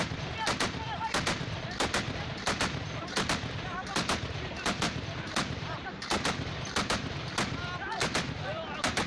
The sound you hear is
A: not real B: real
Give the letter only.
A